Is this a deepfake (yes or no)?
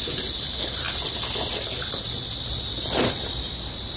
no